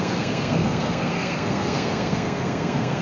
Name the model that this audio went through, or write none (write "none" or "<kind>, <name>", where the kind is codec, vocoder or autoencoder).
codec, SNAC